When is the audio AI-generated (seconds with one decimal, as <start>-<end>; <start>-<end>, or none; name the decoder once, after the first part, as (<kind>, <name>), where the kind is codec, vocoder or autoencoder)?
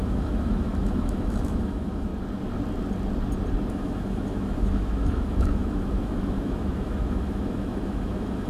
0.0-2.1 (autoencoder, DAC-VAE); 3.7-8.5